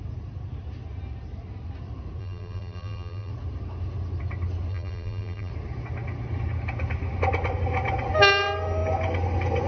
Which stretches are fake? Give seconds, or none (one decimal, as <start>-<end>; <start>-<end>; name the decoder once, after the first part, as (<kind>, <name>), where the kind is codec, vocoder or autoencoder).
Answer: 2.2-3.3 (vocoder, BigVGAN v2); 4.7-5.5